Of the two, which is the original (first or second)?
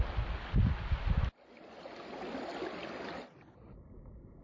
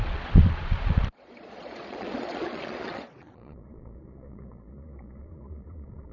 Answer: first